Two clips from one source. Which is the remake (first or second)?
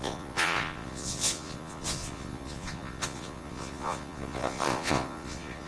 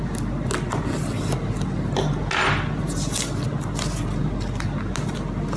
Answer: first